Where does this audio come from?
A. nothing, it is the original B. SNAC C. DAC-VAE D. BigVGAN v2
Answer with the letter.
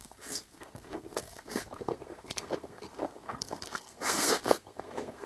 B